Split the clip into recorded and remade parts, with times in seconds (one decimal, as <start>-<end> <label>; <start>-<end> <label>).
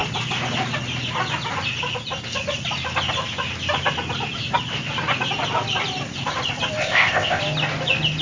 0.0-6.8 recorded; 6.8-7.4 remade; 7.4-8.2 recorded